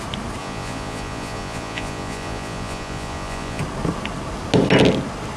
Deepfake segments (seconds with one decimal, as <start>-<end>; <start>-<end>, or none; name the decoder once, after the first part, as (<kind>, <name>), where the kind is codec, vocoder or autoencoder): 0.4-3.6 (vocoder, Vocos)